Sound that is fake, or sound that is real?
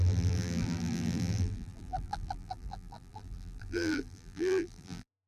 fake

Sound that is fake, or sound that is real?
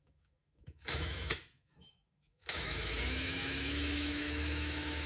fake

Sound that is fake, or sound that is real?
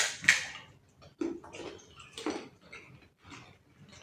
real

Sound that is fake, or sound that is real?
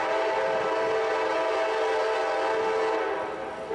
real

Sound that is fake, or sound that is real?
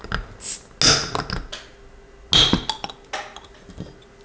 real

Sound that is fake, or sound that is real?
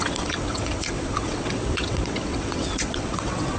fake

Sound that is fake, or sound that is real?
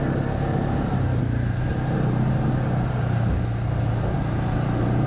real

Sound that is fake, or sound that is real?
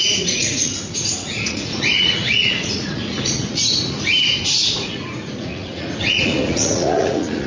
fake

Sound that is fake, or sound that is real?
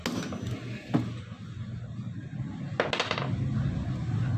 real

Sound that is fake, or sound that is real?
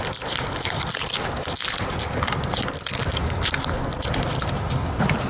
real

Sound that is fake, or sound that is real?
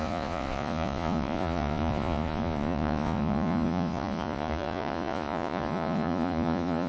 fake